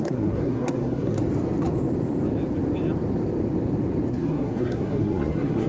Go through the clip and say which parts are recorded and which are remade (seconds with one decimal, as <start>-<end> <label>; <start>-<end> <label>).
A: 0.0-1.2 remade; 1.2-4.1 recorded; 4.1-5.7 remade